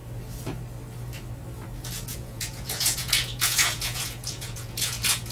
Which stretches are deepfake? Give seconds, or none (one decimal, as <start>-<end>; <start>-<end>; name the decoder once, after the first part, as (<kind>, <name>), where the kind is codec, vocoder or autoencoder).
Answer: 2.1-5.3 (vocoder, Vocos)